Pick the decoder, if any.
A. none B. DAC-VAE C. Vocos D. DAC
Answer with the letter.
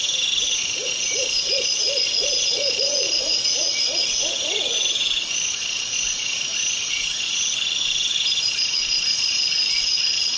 C